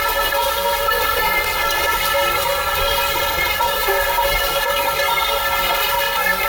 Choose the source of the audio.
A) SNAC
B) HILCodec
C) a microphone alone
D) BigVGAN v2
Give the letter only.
A